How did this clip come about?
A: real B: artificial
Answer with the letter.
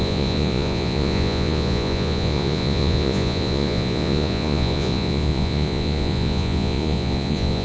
B